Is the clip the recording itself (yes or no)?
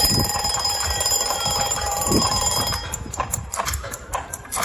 no